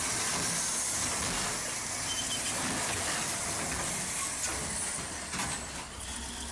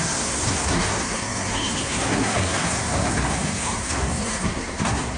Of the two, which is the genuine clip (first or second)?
first